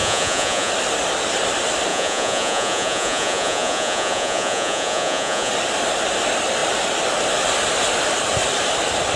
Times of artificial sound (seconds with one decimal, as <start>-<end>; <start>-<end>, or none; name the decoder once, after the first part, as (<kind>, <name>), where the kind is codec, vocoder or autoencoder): 0.0-0.7 (vocoder, Vocos); 1.9-5.5